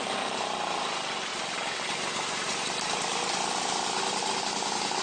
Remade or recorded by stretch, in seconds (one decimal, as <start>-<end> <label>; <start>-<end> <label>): 0.0-5.0 recorded